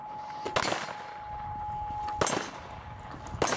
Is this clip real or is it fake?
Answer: real